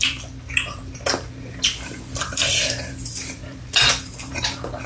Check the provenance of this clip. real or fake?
fake